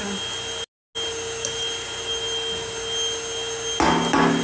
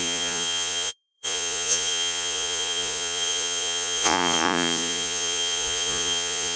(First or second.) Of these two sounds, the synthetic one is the second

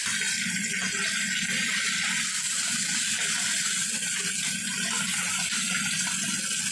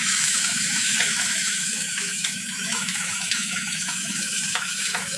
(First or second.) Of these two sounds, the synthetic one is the second